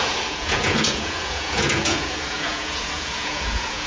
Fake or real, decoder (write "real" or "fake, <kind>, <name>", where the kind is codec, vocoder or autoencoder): fake, vocoder, Vocos